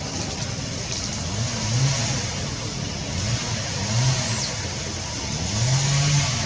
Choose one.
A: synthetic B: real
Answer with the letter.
B